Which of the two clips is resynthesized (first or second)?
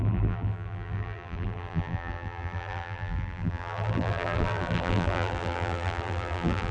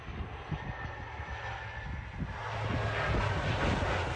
first